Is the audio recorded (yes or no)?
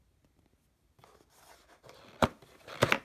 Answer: yes